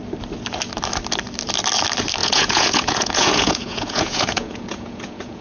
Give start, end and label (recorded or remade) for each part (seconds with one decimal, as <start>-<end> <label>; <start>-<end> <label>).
0.0-2.2 recorded; 2.2-5.4 remade